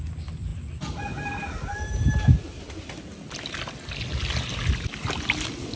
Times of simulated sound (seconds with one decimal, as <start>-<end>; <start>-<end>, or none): none